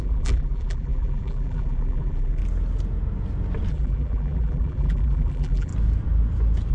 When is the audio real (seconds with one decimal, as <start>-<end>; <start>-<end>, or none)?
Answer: 2.4-3.7; 5.7-6.7